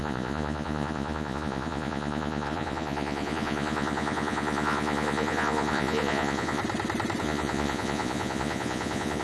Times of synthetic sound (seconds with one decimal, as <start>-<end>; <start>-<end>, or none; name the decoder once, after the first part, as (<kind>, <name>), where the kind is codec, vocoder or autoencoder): 0.0-6.6 (vocoder, Vocos); 7.2-9.2